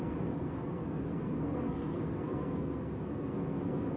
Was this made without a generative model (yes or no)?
no